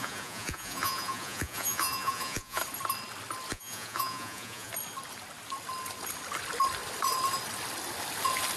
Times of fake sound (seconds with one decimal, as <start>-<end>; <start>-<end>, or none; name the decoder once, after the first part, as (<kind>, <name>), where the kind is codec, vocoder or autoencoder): 0.0-2.6 (vocoder, Vocos); 3.5-4.7